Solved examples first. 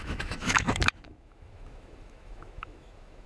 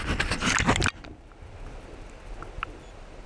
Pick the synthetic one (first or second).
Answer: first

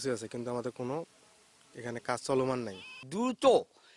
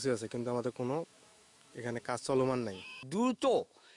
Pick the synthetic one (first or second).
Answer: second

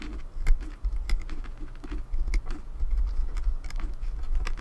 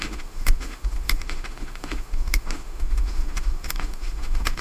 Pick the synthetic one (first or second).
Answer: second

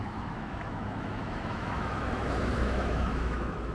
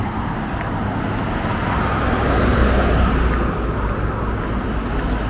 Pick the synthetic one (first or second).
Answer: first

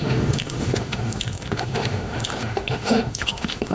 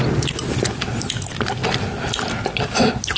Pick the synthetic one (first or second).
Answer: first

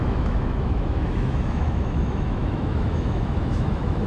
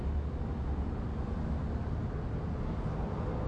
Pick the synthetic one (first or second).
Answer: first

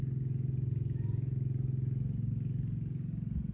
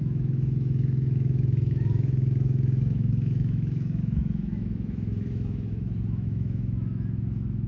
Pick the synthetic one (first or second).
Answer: second